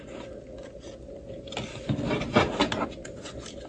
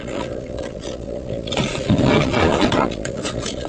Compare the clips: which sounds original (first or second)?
first